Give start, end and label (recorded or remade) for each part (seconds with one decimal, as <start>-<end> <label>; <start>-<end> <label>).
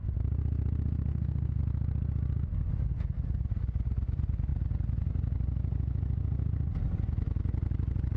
0.0-1.1 recorded; 1.1-1.6 remade; 1.6-8.2 recorded